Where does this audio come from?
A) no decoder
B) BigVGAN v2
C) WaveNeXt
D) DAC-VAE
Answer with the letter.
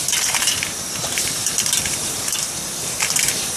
B